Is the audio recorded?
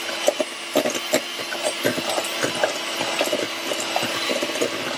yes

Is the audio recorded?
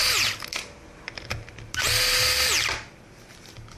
yes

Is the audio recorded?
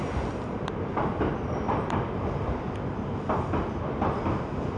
no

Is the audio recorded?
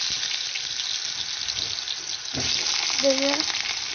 yes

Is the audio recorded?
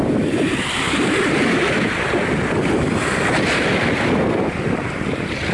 no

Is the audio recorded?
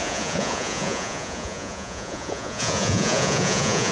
no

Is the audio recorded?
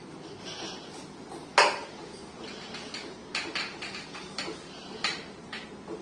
yes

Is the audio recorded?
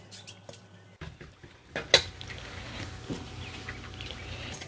yes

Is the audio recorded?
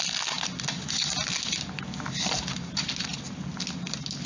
yes